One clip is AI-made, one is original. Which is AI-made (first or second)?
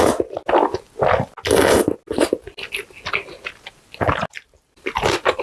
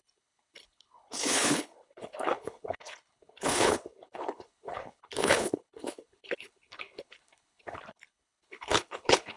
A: second